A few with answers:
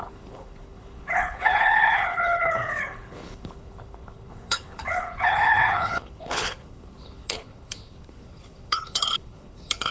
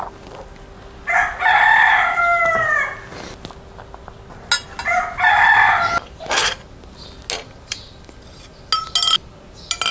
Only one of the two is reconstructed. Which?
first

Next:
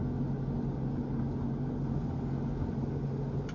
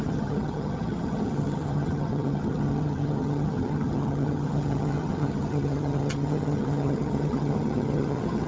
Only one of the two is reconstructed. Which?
second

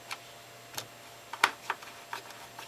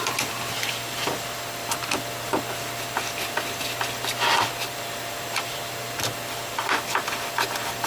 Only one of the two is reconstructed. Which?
second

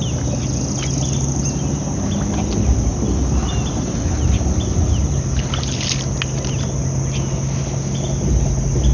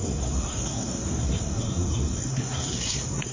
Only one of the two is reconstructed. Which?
second